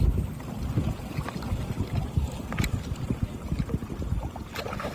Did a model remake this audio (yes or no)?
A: no